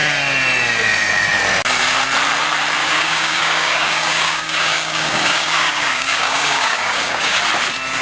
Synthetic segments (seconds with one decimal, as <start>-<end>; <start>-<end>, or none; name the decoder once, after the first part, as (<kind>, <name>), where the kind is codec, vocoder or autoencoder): 2.8-7.4 (codec, DAC)